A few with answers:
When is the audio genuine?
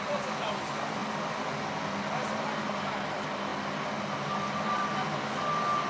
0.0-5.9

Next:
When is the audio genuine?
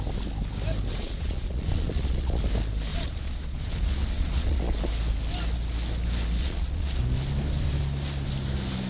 0.0-0.9; 2.4-2.9; 4.8-6.4; 7.0-8.9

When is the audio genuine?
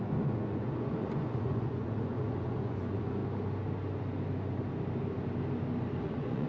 3.2-6.0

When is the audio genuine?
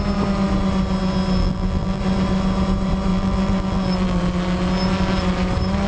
0.0-1.4; 2.0-3.1; 4.2-5.9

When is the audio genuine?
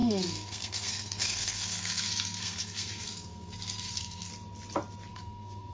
4.3-5.1